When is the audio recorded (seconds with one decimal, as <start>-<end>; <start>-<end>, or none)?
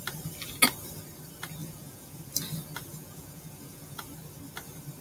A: 0.0-1.6; 2.2-2.9; 4.0-5.0